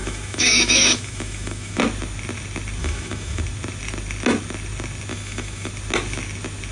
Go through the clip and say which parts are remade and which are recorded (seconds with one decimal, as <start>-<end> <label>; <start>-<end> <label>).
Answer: 0.0-1.8 remade; 1.8-2.8 recorded; 2.8-3.4 remade; 3.4-5.1 recorded; 5.1-5.7 remade; 5.7-6.7 recorded